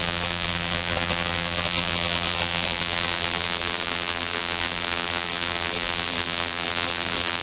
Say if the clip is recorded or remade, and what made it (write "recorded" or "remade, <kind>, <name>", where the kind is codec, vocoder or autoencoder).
remade, vocoder, BigVGAN v2